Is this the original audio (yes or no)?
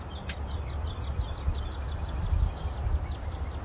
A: yes